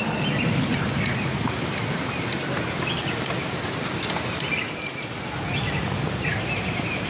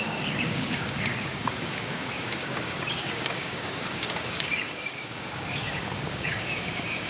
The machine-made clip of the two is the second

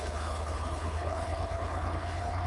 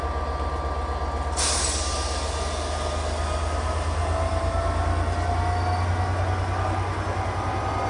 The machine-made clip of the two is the first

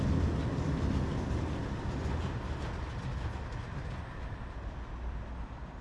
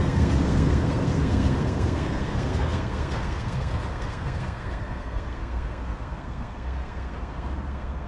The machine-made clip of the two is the second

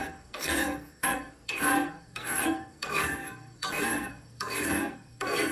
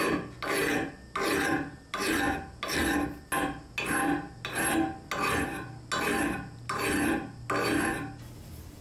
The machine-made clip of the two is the first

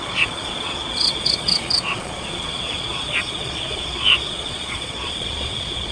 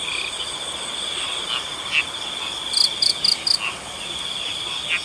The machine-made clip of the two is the first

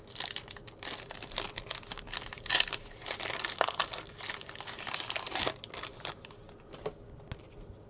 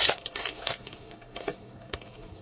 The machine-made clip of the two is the second